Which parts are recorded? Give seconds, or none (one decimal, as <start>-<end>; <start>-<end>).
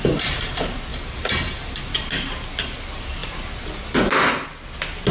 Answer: 0.0-0.9; 1.8-5.1